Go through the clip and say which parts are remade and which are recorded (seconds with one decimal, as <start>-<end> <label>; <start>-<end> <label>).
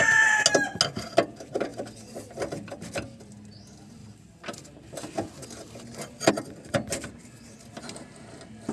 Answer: 0.0-8.7 recorded